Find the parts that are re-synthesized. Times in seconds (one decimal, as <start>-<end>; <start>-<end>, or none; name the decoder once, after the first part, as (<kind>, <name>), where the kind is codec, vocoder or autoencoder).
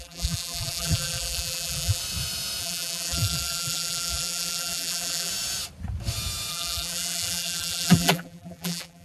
0.0-2.0 (vocoder, BigVGAN v2); 2.6-5.3; 6.5-9.0